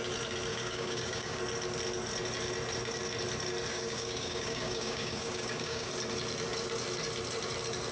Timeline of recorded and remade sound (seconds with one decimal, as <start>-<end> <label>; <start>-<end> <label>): 0.0-0.5 recorded; 0.5-1.4 remade; 1.4-3.7 recorded; 3.7-5.9 remade; 5.9-7.9 recorded